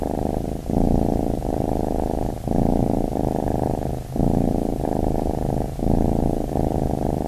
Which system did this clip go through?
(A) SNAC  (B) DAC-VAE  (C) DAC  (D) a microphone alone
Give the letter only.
D